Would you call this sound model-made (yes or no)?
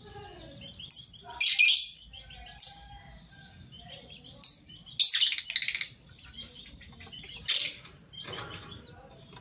no